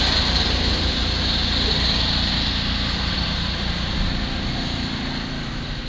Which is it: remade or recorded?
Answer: recorded